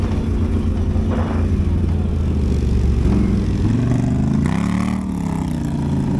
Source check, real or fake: real